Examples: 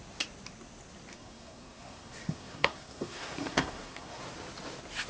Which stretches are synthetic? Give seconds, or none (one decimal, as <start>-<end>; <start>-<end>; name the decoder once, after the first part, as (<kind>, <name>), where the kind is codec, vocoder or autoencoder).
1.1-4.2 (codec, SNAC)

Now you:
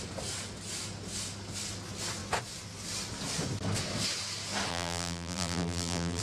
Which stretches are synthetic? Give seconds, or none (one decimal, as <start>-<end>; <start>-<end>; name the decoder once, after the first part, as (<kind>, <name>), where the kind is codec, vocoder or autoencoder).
4.7-6.2 (vocoder, BigVGAN v2)

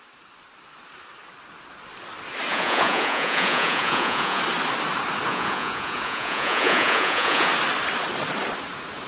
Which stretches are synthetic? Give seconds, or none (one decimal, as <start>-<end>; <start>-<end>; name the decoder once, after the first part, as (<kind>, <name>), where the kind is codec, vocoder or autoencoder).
2.5-4.4 (vocoder, Vocos); 5.3-7.5